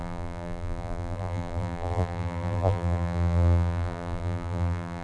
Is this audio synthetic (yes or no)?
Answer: yes